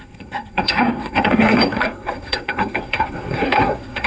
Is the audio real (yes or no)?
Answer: no